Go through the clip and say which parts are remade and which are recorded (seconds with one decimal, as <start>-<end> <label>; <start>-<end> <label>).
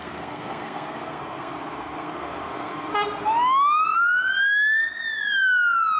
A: 0.0-2.9 remade; 2.9-6.0 recorded